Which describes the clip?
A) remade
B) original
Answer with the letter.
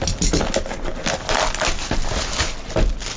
B